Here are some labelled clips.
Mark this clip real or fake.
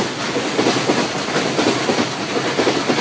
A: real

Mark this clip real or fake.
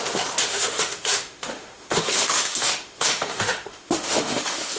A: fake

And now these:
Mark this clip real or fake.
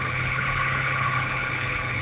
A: fake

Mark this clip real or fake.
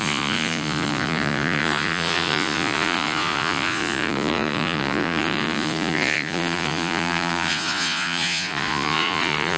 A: fake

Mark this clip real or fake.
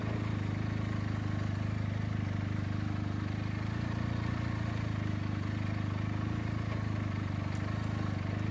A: real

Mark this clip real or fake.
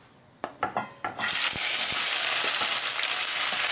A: real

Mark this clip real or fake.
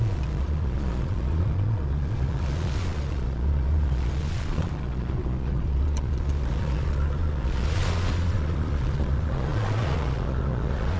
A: fake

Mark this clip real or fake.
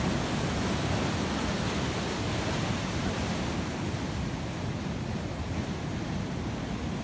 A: real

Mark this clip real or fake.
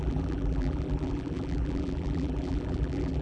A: fake